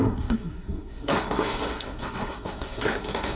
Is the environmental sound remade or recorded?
remade